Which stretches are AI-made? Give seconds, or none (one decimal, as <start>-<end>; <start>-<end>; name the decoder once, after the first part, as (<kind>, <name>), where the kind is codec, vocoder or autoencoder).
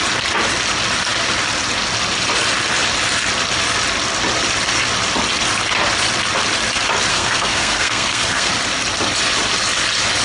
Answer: 7.1-8.5 (codec, SNAC)